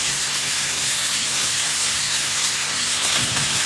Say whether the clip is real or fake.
fake